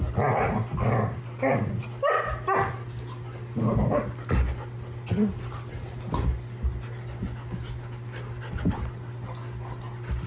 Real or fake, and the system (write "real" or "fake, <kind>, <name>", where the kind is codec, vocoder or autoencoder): real